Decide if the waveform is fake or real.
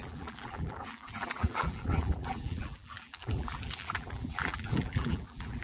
fake